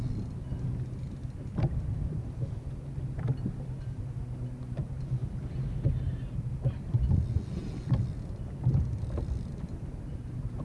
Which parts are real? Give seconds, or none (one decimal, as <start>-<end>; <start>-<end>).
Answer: 0.0-10.6